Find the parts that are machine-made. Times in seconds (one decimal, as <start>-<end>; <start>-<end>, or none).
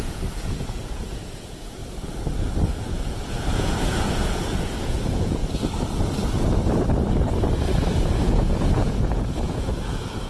0.0-1.8; 2.7-5.4; 7.9-10.3